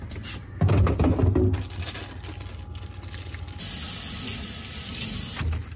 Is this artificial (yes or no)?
no